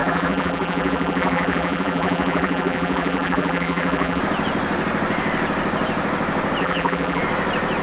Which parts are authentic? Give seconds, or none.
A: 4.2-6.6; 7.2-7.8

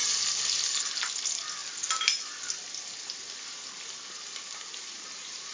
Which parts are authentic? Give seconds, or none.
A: 0.0-5.5